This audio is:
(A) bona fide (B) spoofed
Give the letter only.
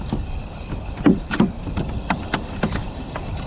A